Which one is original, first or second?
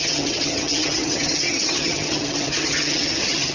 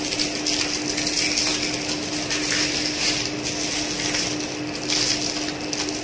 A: second